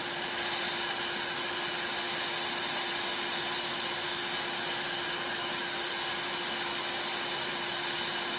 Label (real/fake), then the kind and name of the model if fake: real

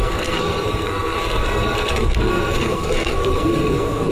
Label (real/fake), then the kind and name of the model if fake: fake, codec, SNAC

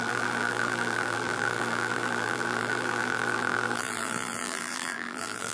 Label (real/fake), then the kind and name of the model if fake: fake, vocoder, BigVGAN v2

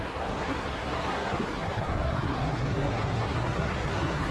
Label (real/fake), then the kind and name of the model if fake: fake, codec, SNAC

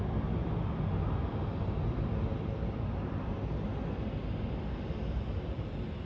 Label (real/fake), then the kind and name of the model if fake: real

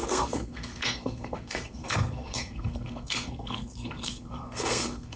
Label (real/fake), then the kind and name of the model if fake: fake, codec, SNAC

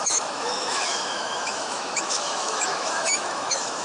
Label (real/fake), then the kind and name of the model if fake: fake, autoencoder, DAC-VAE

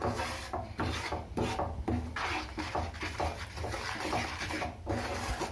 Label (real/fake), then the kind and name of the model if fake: real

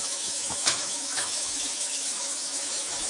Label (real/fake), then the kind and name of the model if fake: fake, autoencoder, DAC-VAE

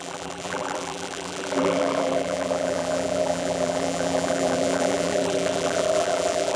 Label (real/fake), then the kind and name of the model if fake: fake, vocoder, BigVGAN v2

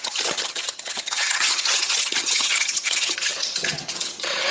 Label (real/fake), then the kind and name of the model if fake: fake, vocoder, HiFi-GAN